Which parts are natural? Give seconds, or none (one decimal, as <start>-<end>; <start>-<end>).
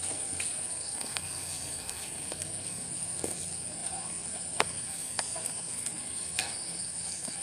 none